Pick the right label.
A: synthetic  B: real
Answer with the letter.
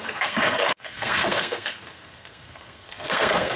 A